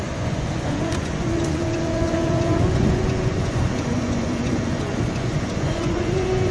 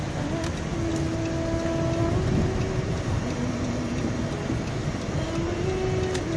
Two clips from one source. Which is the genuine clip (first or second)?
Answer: second